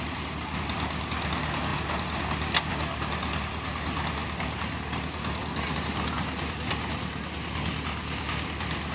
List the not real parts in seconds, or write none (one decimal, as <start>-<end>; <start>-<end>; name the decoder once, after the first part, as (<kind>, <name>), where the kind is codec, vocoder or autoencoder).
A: none